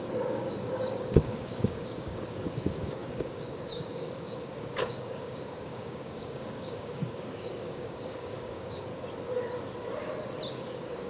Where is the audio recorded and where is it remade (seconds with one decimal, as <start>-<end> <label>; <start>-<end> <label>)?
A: 0.0-8.9 remade; 8.9-10.5 recorded; 10.5-11.1 remade